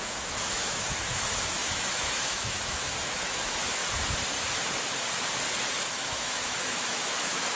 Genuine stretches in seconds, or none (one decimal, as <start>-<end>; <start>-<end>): 3.8-5.9